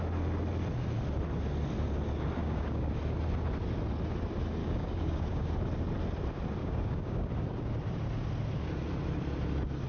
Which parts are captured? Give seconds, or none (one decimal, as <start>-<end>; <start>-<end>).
0.0-2.4; 2.9-4.6; 5.5-6.6; 7.3-9.9